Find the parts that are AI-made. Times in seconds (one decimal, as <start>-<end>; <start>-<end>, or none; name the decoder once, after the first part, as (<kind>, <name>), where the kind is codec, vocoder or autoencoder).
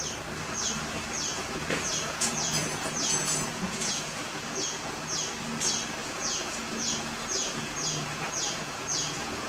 1.3-5.3 (vocoder, Vocos); 6.0-9.5